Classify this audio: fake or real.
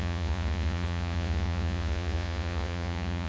fake